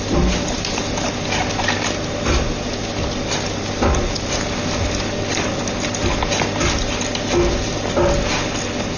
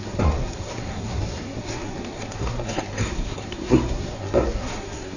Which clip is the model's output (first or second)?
second